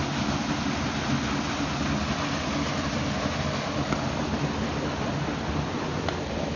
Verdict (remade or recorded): recorded